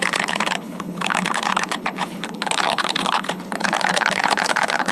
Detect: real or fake fake